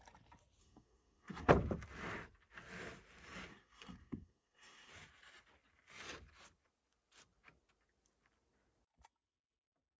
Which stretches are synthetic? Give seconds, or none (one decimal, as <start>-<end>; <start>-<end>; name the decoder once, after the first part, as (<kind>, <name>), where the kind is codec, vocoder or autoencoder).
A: 0.6-1.5 (codec, SNAC); 3.5-4.9